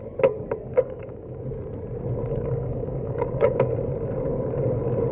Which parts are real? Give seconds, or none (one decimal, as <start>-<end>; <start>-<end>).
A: 0.0-0.7; 1.4-2.3; 3.6-5.1